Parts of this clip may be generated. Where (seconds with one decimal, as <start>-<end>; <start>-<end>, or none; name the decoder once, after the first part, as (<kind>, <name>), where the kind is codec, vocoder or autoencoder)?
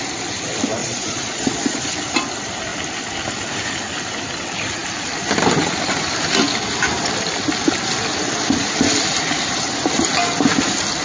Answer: 0.8-1.8 (vocoder, Vocos)